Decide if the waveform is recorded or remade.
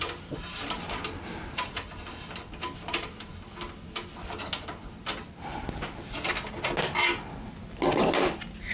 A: recorded